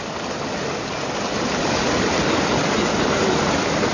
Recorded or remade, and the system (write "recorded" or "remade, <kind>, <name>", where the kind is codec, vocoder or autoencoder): recorded